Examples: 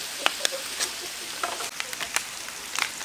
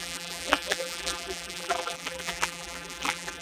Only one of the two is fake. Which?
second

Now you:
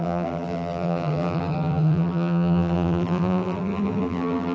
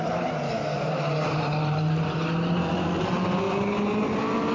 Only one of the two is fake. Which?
first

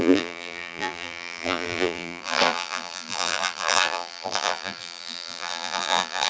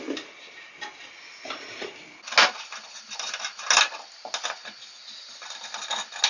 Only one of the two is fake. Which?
first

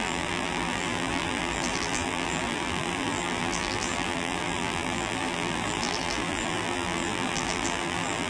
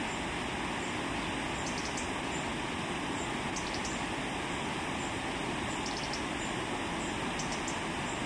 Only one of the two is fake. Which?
first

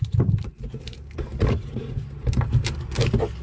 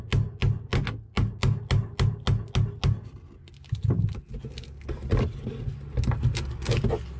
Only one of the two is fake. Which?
first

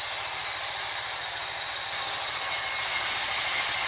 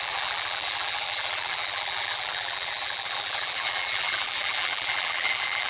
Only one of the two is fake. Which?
second